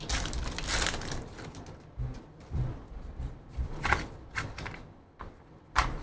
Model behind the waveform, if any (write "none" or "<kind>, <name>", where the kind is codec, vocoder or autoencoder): vocoder, BigVGAN v2